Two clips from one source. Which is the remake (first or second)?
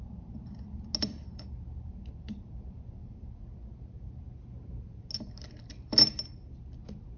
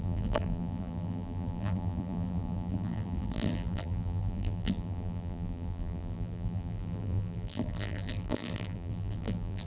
second